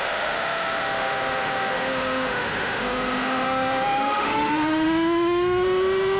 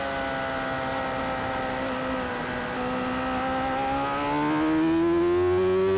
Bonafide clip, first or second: second